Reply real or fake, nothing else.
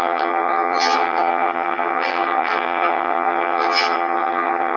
fake